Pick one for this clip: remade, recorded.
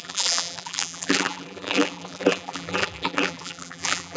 remade